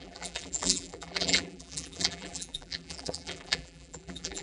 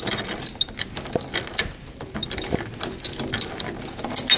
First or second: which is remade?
first